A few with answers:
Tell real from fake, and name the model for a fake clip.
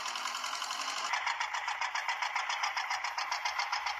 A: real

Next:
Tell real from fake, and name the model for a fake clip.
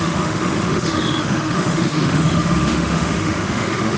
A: fake, autoencoder, DAC-VAE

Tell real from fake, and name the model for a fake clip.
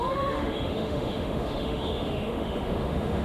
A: fake, autoencoder, DAC-VAE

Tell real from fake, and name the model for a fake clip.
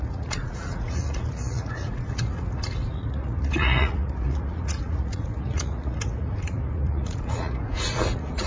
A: fake, vocoder, Vocos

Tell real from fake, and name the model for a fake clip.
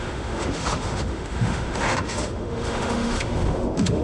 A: fake, autoencoder, DAC-VAE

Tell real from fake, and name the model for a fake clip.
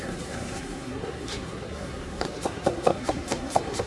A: fake, codec, SNAC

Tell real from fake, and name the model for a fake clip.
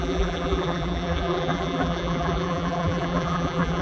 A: fake, vocoder, BigVGAN v2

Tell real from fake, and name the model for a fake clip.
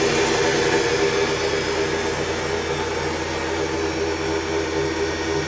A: real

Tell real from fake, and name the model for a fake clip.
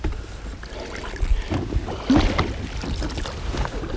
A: real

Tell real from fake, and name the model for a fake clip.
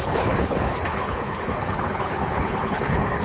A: fake, codec, HILCodec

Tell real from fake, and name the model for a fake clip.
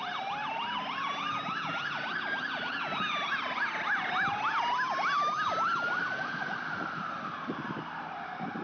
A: real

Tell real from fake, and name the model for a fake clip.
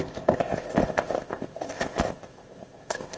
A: fake, codec, ZipCodec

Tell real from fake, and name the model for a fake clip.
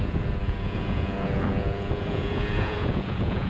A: fake, vocoder, Vocos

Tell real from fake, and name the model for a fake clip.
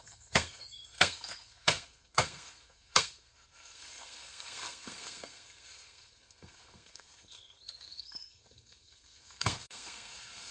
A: fake, codec, SNAC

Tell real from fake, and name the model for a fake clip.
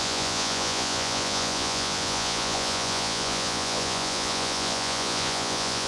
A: fake, vocoder, Vocos